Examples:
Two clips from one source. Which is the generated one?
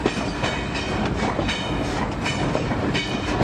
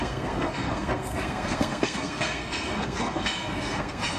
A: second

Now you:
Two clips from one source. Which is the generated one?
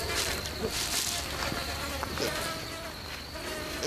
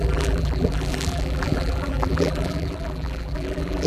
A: second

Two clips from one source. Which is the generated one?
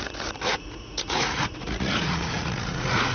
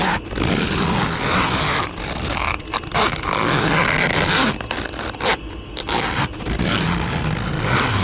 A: first